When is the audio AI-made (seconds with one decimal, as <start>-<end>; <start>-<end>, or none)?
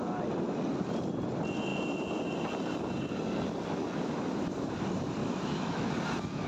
5.2-5.9